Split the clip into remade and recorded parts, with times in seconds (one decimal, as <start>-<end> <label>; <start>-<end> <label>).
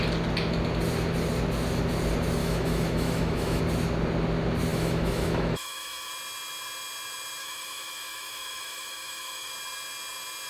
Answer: 0.0-2.4 recorded; 2.4-3.6 remade; 3.6-4.7 recorded; 4.7-6.1 remade; 6.1-7.4 recorded; 7.4-9.5 remade; 9.5-10.5 recorded